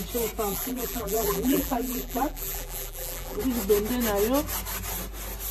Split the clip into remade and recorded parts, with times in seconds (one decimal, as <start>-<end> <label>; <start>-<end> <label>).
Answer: 0.0-0.5 recorded; 0.5-3.4 remade; 3.4-5.5 recorded